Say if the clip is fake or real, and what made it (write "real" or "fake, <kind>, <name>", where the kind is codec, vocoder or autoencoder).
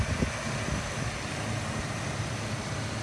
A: real